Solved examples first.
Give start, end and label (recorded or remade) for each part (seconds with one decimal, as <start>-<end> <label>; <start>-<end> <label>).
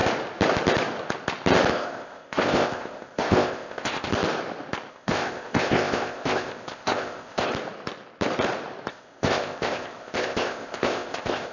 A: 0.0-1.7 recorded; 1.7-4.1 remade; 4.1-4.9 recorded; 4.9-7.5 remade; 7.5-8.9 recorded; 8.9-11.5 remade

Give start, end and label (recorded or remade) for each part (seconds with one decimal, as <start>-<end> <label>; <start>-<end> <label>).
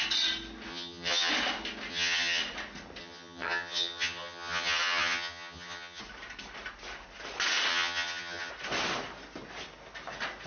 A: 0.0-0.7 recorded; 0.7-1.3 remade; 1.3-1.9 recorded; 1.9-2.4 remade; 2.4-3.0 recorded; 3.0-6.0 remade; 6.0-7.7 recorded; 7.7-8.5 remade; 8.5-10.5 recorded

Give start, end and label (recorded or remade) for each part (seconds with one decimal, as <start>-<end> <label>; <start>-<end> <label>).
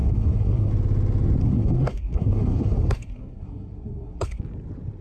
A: 0.0-0.7 remade; 0.7-1.4 recorded; 1.4-4.4 remade; 4.4-5.0 recorded